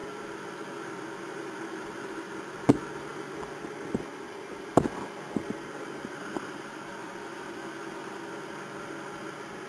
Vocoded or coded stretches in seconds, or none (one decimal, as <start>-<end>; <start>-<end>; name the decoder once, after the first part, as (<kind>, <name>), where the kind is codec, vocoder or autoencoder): 0.5-3.1 (vocoder, BigVGAN v2); 5.5-9.7